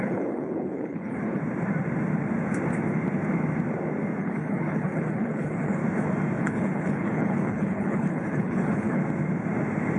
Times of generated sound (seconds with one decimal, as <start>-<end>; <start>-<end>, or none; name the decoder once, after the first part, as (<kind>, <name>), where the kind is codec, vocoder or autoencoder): 0.0-1.4 (codec, HILCodec); 4.2-5.8; 6.4-9.0